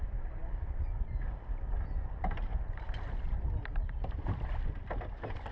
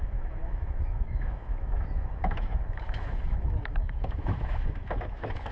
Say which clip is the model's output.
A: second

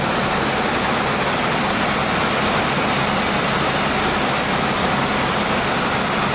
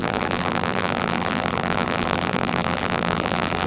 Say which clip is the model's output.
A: second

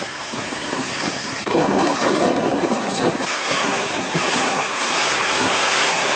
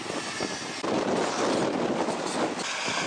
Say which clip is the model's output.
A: first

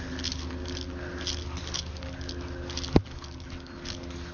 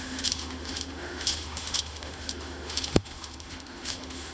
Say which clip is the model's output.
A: second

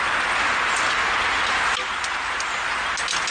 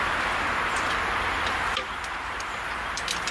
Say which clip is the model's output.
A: second